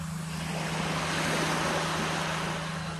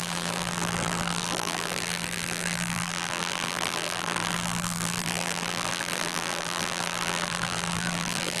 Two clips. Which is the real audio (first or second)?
first